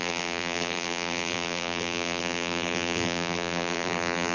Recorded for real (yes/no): no